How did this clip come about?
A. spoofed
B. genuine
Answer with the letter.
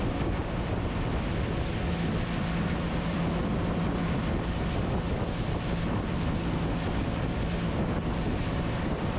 B